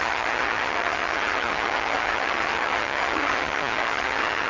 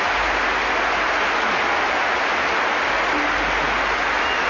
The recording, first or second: second